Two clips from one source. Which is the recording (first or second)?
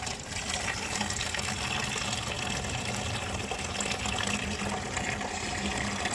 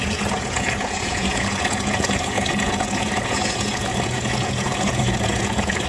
first